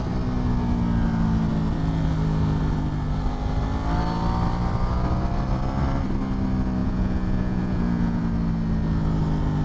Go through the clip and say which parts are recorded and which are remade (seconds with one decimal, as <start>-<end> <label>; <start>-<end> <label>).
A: 0.0-6.8 recorded; 6.8-8.2 remade; 8.2-9.6 recorded